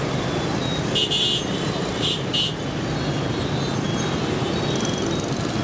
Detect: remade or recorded recorded